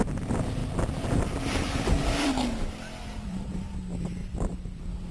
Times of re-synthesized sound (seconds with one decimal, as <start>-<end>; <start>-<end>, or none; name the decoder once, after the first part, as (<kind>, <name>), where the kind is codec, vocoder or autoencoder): 0.6-3.7 (vocoder, BigVGAN v2); 4.2-5.1